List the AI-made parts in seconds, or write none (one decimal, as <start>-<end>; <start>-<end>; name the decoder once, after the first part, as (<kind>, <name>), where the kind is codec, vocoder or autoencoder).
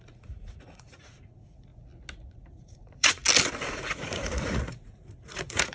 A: 0.0-1.7 (vocoder, Vocos); 2.3-3.2; 3.7-5.7